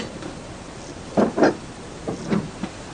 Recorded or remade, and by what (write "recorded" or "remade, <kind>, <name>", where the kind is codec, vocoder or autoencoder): remade, vocoder, BigVGAN v2